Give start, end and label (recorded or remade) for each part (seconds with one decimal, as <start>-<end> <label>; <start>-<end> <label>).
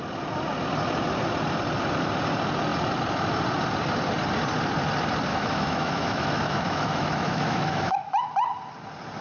0.0-5.3 recorded; 5.3-8.2 remade; 8.2-9.2 recorded